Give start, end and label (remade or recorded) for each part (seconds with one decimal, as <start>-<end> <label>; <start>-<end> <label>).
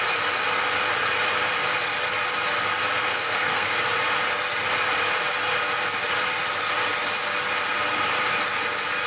0.0-3.1 recorded; 3.1-3.7 remade; 3.7-9.1 recorded